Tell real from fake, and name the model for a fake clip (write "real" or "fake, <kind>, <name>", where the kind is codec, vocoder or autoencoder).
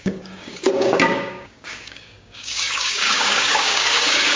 fake, codec, DAC